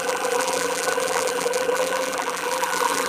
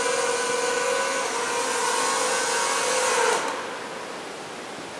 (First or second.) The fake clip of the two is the first